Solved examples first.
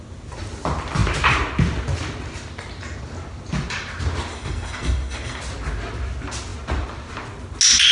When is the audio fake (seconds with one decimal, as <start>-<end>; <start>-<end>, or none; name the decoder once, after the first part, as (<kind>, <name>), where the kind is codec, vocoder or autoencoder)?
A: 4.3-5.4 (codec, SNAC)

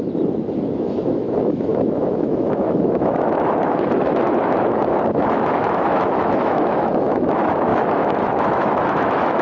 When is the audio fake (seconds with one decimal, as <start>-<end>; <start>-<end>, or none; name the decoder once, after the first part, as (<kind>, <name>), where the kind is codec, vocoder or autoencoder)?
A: 0.0-9.4 (autoencoder, DAC-VAE)

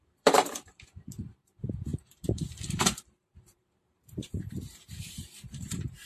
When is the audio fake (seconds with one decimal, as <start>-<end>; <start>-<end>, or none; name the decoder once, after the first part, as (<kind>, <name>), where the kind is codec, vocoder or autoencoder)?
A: 0.0-6.1 (vocoder, BigVGAN v2)

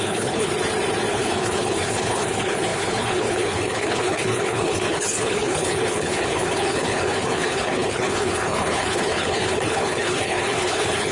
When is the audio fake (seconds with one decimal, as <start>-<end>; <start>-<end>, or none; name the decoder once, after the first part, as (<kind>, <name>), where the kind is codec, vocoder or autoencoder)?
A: 0.0-0.5 (codec, HILCodec); 1.1-11.1

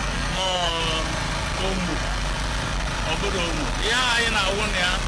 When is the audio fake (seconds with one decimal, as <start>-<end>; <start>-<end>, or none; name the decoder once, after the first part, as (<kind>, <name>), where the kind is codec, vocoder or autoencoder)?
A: 0.0-0.8 (codec, SNAC)